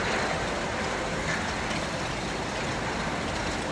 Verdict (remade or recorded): recorded